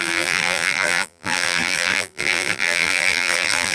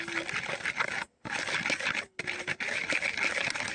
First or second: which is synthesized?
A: first